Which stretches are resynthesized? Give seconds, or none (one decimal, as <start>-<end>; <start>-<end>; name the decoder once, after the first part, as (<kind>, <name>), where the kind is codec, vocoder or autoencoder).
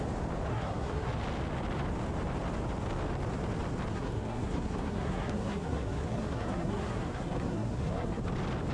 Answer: 0.5-1.1 (codec, SNAC); 3.9-8.2